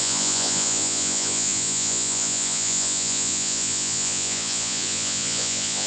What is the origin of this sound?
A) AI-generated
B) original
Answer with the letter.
A